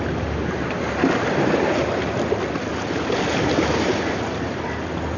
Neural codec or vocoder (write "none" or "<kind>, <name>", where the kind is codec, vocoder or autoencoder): none